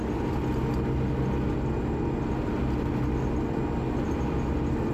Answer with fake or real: real